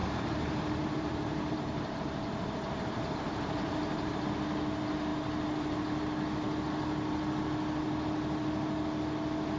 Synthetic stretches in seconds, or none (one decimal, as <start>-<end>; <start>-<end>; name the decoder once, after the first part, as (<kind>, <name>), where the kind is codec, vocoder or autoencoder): 0.0-4.2 (vocoder, BigVGAN v2)